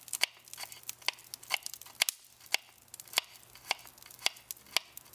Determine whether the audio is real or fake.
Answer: real